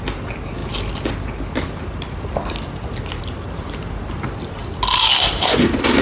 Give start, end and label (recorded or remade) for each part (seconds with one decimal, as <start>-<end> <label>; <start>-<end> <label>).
0.0-6.0 recorded